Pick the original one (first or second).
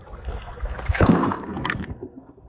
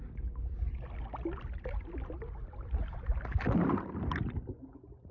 second